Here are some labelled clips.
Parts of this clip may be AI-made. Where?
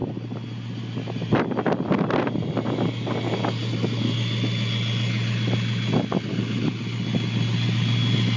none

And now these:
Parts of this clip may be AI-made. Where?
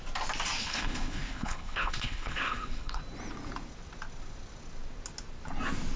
0.6-3.0 (codec, HILCodec)